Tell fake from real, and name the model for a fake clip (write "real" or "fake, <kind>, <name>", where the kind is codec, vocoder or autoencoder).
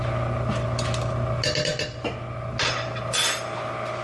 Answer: real